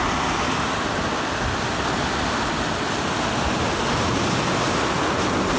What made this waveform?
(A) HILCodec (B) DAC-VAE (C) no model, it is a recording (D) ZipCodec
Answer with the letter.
C